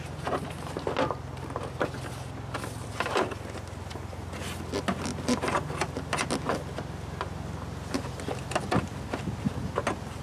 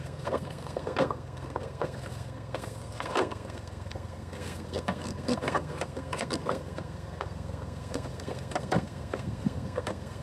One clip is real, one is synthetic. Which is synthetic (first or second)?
second